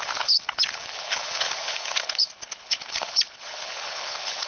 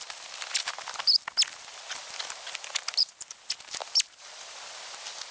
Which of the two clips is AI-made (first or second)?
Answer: first